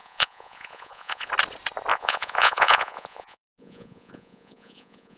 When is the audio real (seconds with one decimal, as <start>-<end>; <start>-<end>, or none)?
1.3-1.9